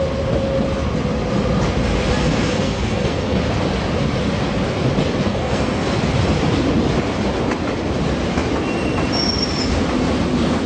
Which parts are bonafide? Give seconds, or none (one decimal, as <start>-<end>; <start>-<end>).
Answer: 0.0-2.2; 3.4-5.3; 6.0-10.7